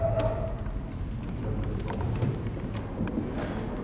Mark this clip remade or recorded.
recorded